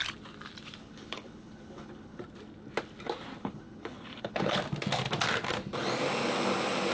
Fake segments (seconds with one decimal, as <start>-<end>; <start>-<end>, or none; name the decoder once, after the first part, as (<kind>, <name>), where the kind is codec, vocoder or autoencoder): 0.8-2.2 (codec, HILCodec); 3.4-4.6